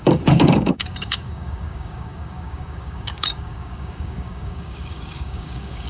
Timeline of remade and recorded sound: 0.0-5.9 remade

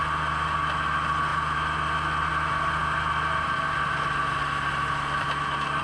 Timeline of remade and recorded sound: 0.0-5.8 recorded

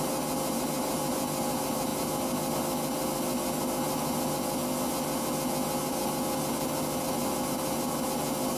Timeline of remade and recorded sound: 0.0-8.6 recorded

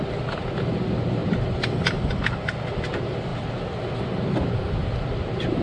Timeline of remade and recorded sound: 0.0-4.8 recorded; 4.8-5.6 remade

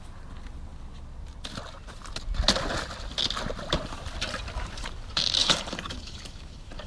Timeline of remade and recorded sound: 0.0-5.4 recorded; 5.4-6.9 remade

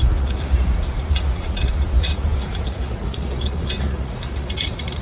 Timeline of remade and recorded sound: 0.0-5.0 remade